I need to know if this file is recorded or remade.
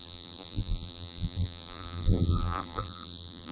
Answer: remade